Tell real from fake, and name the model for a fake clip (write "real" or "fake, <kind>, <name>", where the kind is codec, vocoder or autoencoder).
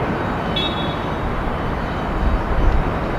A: real